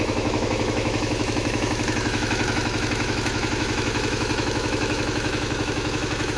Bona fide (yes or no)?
no